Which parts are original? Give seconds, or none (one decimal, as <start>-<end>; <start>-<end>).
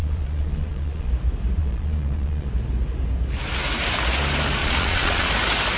1.1-1.6; 2.5-4.6; 5.3-5.8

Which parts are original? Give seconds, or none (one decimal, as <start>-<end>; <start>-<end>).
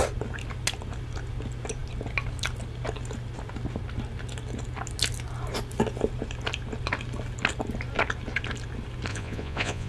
0.0-9.1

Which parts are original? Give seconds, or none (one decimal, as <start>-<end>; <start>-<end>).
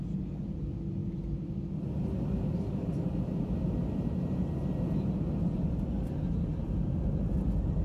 0.0-7.8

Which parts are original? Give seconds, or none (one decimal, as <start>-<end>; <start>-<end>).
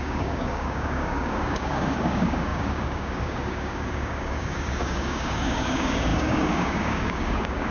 none